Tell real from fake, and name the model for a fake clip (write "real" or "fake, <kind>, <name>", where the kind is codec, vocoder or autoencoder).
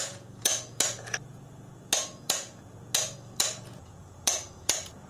fake, vocoder, Vocos